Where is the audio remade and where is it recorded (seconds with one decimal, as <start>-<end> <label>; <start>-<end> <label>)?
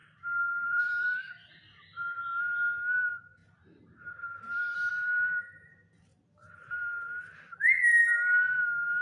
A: 0.0-1.3 remade; 1.3-3.4 recorded; 3.4-4.9 remade; 4.9-9.0 recorded